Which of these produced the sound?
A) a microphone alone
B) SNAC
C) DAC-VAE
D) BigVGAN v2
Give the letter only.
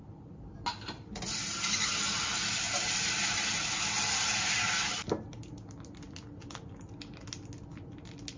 A